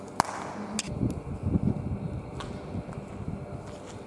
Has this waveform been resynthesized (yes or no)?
no